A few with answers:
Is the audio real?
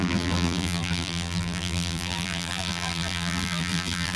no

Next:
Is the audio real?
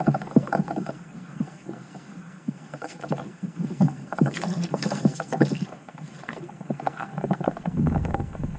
no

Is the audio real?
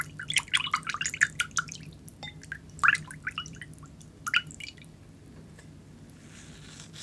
yes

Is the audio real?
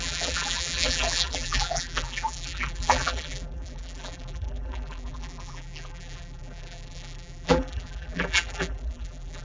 no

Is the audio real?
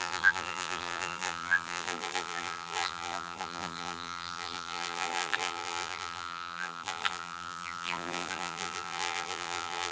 no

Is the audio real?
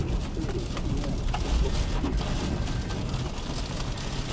yes